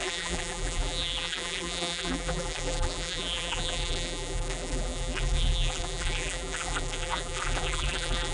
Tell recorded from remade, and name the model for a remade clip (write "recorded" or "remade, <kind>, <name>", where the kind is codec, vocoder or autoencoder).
remade, vocoder, BigVGAN v2